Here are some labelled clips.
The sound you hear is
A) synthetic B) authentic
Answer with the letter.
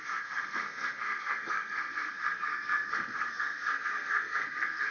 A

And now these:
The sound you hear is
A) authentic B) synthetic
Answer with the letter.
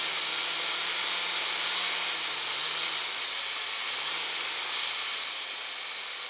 A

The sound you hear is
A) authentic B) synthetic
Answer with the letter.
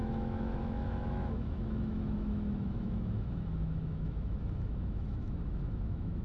B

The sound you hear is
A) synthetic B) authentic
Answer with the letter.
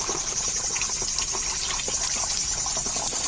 B